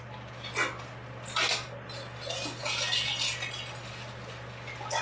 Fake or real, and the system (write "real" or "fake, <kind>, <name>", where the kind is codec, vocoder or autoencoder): real